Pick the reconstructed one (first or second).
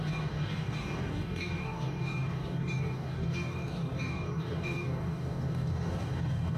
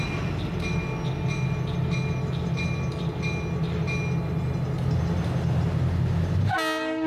first